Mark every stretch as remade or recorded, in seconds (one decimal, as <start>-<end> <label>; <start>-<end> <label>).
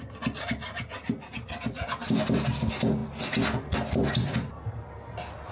0.0-5.5 recorded